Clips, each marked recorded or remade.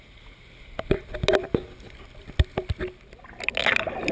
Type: recorded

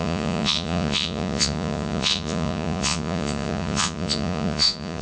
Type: remade